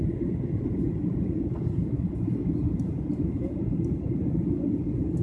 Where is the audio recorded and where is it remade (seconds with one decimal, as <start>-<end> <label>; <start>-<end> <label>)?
0.0-5.2 recorded